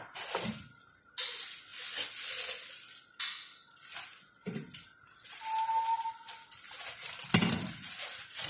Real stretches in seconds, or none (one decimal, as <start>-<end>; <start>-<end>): 0.0-8.5